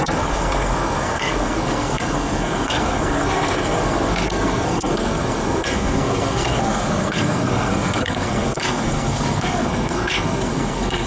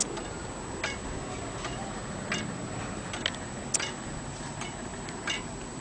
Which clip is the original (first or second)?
second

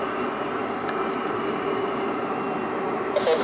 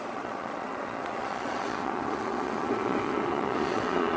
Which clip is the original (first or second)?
first